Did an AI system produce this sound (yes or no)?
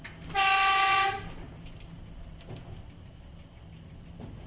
no